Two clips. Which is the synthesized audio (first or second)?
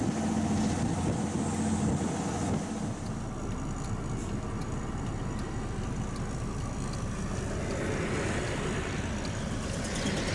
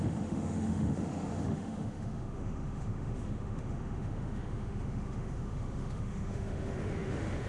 second